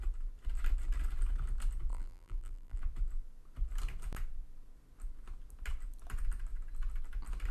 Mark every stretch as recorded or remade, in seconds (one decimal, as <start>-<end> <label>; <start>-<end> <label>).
0.0-1.9 recorded; 1.9-2.8 remade; 2.8-7.5 recorded